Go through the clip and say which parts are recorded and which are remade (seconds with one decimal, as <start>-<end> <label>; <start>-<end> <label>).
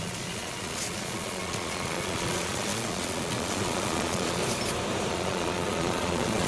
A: 0.0-4.4 remade; 4.4-5.1 recorded; 5.1-6.5 remade